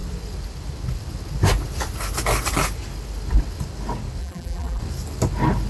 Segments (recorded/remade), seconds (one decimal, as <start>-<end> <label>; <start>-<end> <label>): 0.0-4.2 recorded; 4.2-4.8 remade; 4.8-5.7 recorded